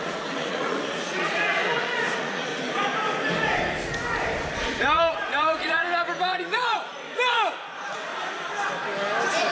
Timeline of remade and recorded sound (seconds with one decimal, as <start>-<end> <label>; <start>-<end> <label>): 0.0-2.5 remade; 2.5-4.6 recorded; 4.6-8.1 remade; 8.1-9.5 recorded